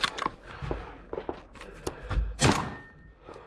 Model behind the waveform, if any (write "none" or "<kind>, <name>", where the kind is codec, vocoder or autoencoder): none